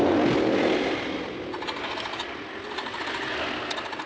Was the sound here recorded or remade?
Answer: recorded